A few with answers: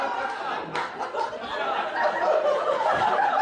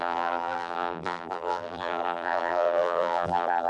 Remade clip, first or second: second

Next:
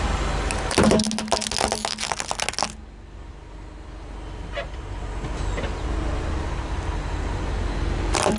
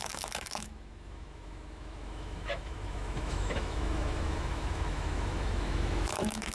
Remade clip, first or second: second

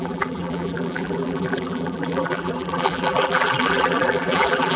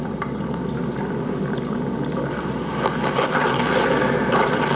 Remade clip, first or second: first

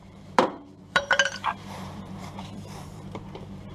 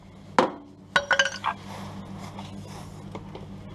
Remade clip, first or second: first